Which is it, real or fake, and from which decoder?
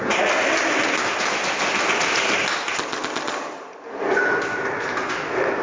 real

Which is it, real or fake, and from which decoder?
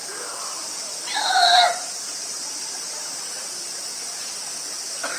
fake, vocoder, BigVGAN v2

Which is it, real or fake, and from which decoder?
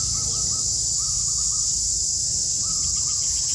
real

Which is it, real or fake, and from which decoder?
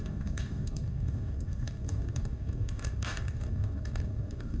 fake, codec, DAC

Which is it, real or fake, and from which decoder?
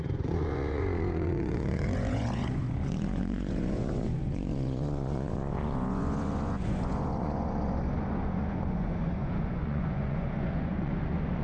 fake, vocoder, Vocos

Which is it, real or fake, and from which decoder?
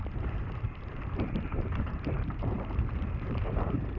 fake, vocoder, BigVGAN v2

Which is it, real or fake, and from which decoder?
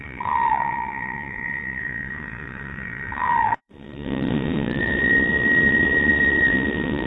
fake, vocoder, WaveNeXt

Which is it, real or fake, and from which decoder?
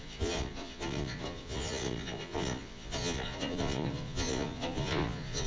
fake, vocoder, Vocos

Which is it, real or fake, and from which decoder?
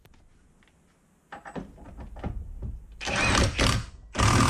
real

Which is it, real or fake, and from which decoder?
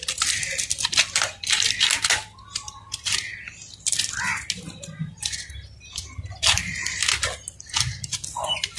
real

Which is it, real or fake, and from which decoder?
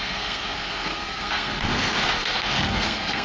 fake, codec, SNAC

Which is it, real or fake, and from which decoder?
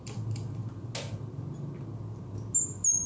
real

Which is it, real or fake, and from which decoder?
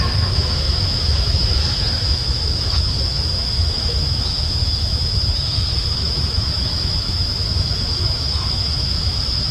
fake, autoencoder, DAC-VAE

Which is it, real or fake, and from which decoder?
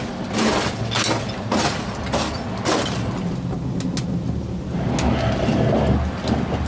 real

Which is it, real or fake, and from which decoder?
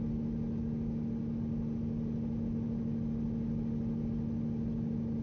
real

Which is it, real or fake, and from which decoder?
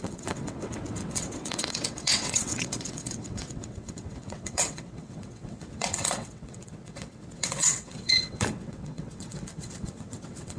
fake, vocoder, WaveNeXt